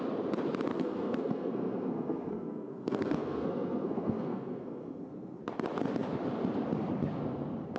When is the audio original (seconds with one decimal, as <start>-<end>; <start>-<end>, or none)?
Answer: 0.0-0.7; 5.4-7.8